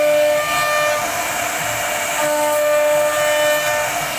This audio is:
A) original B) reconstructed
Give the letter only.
A